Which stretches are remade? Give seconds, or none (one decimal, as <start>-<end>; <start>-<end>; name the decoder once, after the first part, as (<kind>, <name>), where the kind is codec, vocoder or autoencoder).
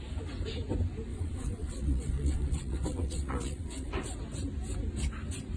1.1-3.9 (vocoder, WaveNeXt)